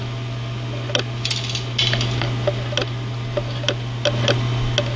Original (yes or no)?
yes